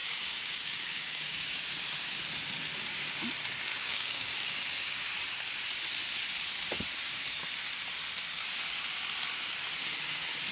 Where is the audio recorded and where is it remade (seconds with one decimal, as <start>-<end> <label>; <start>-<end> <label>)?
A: 0.0-1.6 remade; 1.6-3.7 recorded; 3.7-5.0 remade; 5.0-10.5 recorded